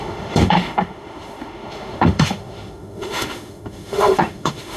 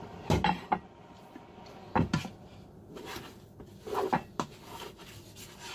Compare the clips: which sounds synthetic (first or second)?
first